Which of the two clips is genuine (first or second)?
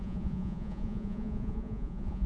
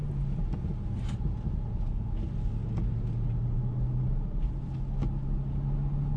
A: second